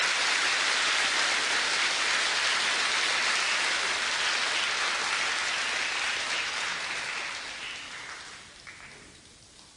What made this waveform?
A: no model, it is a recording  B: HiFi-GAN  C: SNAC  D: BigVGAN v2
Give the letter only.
A